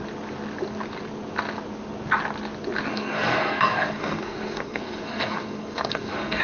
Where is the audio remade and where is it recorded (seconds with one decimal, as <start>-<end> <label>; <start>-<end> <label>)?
0.0-2.9 recorded; 2.9-6.4 remade